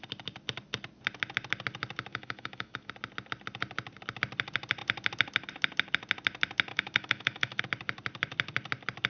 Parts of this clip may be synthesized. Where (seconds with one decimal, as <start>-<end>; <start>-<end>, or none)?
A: 2.1-2.9; 6.7-7.6